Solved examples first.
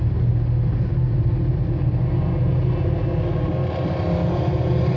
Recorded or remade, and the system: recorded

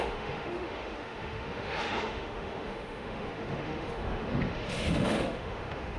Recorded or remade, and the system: remade, autoencoder, DAC-VAE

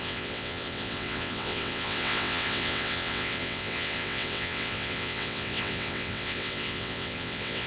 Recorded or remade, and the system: remade, vocoder, WaveNeXt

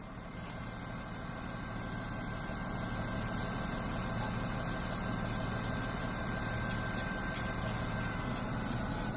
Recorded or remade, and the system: recorded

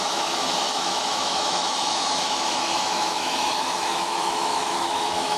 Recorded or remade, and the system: remade, autoencoder, DAC-VAE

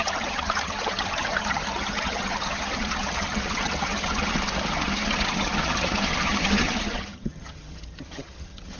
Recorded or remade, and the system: remade, vocoder, HiFi-GAN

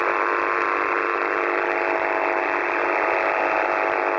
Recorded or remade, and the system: recorded